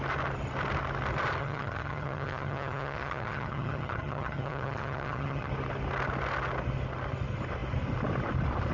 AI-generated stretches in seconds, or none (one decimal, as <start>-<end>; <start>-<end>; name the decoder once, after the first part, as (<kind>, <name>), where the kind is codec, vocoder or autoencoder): 1.4-5.5 (vocoder, HiFi-GAN)